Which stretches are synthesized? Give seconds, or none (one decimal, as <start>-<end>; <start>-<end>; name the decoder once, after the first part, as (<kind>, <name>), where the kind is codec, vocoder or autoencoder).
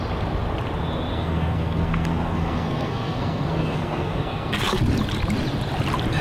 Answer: 1.1-4.8 (codec, SNAC)